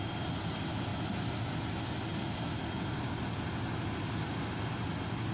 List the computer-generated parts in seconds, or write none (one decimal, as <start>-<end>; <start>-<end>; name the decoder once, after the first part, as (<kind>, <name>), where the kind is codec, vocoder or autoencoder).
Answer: none